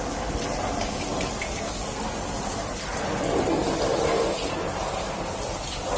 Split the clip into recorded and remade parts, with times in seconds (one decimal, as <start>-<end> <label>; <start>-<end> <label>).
0.0-3.6 recorded; 3.6-6.0 remade